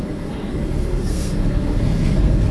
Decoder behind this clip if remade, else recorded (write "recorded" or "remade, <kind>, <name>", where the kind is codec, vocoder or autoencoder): remade, codec, SNAC